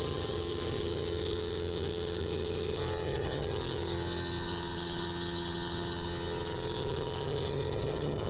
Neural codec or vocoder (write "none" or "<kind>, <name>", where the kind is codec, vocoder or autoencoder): vocoder, HiFi-GAN